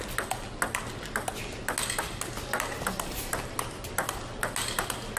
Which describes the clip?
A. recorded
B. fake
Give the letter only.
A